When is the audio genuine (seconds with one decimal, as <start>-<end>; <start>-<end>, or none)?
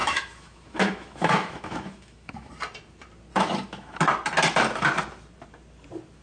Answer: 2.5-3.3; 4.0-6.2